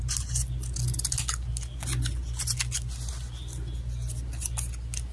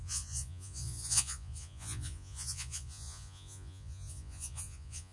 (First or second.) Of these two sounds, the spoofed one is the second